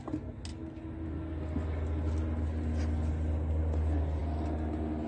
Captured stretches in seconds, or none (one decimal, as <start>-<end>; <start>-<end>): 0.0-5.1